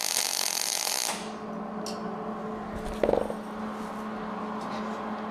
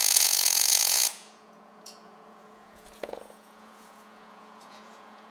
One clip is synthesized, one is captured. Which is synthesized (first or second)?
second